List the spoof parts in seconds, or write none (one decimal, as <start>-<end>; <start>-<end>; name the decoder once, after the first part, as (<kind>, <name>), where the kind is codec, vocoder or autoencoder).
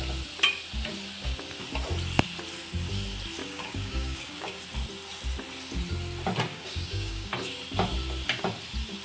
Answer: 3.4-4.6 (codec, DAC); 6.5-7.3